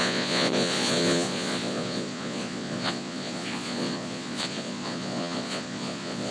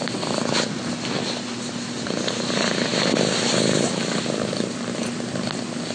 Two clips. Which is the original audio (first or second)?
second